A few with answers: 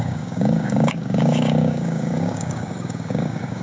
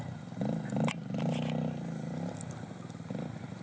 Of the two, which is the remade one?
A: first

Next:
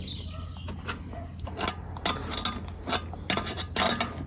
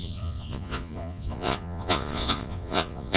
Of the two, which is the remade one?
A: second